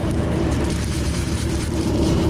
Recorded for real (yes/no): no